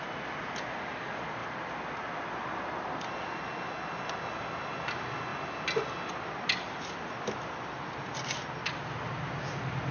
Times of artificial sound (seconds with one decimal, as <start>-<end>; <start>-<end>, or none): none